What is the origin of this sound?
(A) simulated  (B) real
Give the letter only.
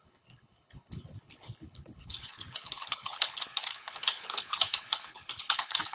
A